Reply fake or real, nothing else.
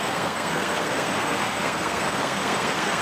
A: fake